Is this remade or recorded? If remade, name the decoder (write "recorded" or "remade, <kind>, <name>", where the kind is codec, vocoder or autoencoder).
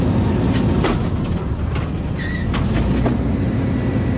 recorded